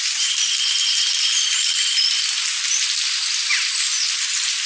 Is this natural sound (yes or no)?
yes